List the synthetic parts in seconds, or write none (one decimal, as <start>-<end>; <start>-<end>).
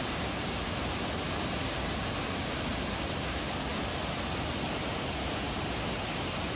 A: none